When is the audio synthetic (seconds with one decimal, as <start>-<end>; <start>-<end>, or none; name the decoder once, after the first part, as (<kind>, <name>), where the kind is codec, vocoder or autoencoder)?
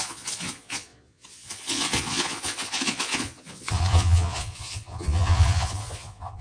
0.0-6.4 (vocoder, Vocos)